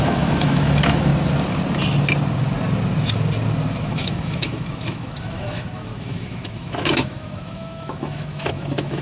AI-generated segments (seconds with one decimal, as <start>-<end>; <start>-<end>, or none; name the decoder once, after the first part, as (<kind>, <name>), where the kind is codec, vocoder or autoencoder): 0.0-1.1 (autoencoder, DAC-VAE); 3.8-9.0